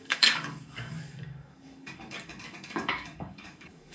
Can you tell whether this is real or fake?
fake